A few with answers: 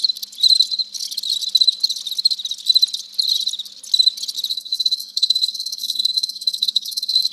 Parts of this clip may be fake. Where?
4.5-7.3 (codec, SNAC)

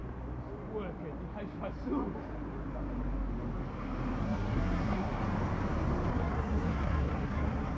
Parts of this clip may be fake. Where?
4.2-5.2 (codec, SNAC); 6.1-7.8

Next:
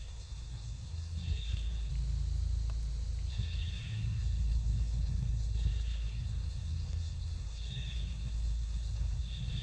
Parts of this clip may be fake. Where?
0.0-1.9 (codec, SNAC); 3.3-9.6